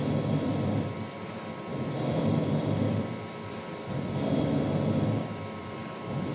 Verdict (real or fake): fake